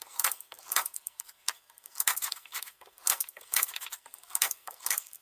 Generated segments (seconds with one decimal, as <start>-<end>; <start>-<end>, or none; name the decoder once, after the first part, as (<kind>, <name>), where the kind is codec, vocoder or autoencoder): 0.0-5.2 (codec, SNAC)